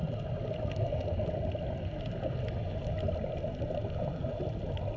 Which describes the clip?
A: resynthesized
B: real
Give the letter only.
B